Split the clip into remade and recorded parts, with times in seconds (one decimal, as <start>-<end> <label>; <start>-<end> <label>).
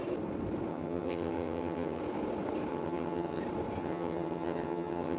0.0-0.7 recorded; 0.7-2.0 remade; 2.0-2.7 recorded; 2.7-3.4 remade; 3.4-3.8 recorded; 3.8-5.2 remade